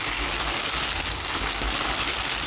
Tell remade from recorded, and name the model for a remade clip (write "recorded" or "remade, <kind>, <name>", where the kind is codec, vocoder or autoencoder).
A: recorded